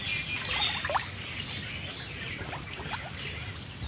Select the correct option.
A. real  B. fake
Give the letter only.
A